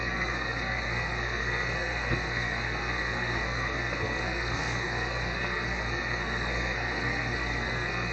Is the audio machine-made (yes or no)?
yes